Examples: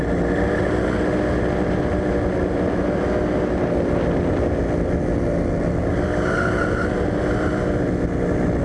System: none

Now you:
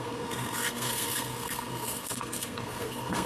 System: codec, SNAC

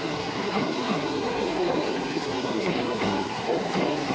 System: codec, SNAC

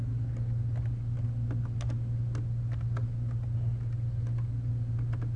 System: none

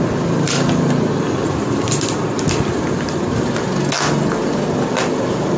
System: none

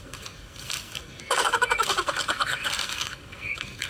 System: codec, SNAC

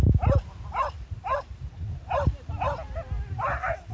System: none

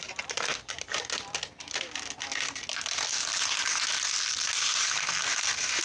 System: none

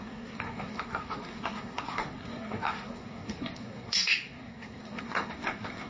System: codec, SNAC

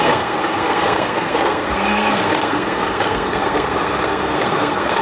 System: codec, SNAC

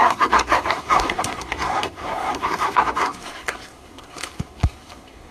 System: codec, SNAC